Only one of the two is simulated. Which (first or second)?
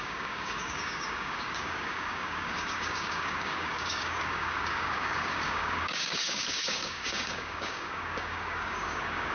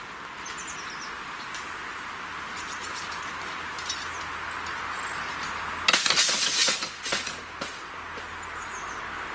first